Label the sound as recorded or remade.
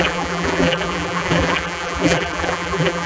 remade